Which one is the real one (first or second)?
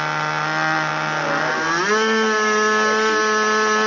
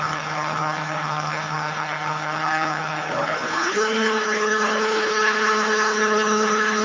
first